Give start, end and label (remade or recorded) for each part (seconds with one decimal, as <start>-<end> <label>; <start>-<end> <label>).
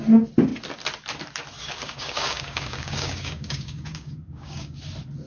0.0-1.6 recorded; 1.6-4.8 remade; 4.8-5.3 recorded